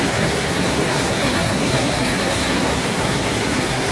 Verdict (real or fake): fake